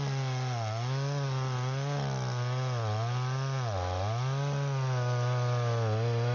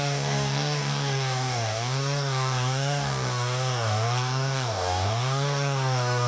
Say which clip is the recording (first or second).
first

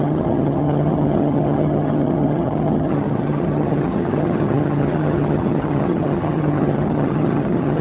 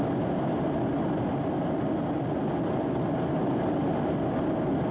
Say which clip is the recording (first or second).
second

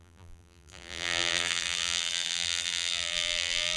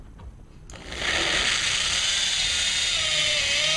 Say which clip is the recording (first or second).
second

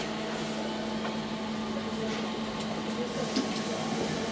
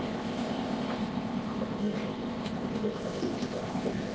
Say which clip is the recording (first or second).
first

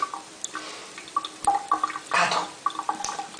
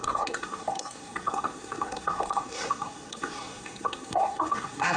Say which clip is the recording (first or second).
first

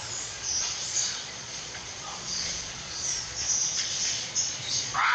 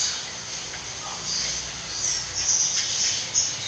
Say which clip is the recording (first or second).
second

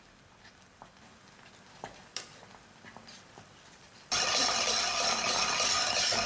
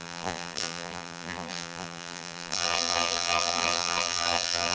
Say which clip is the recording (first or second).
first